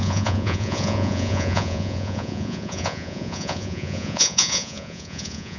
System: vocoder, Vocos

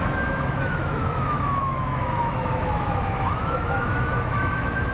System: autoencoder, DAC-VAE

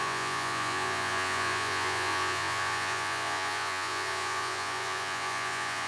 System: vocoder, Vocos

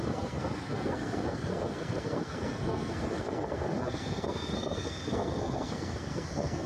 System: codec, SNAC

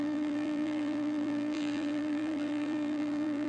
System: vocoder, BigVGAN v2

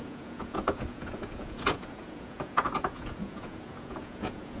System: vocoder, Vocos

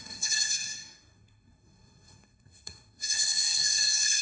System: codec, SNAC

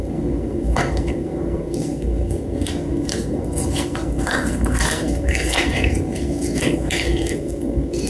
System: codec, SNAC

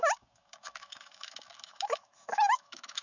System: autoencoder, DAC-VAE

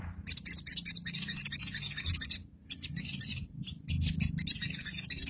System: none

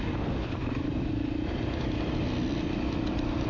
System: vocoder, BigVGAN v2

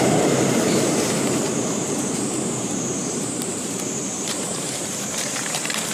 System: vocoder, BigVGAN v2